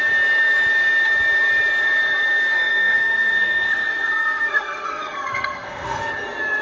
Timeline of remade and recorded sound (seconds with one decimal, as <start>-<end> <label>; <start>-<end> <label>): 0.0-2.5 recorded; 2.5-6.1 remade; 6.1-6.6 recorded